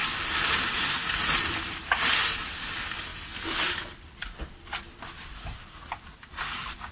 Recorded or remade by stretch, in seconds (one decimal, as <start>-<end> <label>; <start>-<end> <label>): 0.0-6.9 recorded